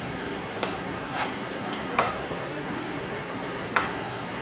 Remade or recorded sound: remade